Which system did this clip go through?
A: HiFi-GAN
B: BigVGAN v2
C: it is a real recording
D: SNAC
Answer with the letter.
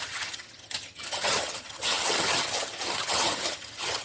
A